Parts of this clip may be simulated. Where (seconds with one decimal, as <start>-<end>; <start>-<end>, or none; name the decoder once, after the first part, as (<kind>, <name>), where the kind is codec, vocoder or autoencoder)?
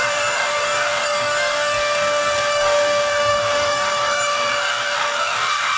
0.0-5.8 (codec, DAC)